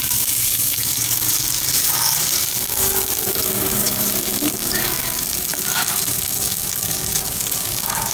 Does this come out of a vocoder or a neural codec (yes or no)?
yes